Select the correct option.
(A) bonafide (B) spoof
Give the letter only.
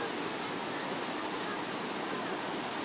A